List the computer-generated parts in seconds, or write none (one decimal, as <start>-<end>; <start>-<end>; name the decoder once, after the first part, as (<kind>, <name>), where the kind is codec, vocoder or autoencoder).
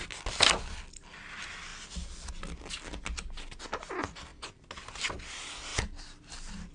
5.7-6.2 (vocoder, BigVGAN v2)